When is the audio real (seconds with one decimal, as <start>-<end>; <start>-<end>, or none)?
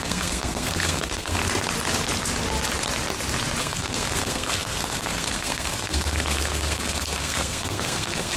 1.4-3.6